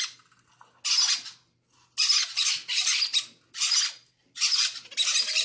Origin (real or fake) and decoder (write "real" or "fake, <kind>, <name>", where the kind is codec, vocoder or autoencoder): real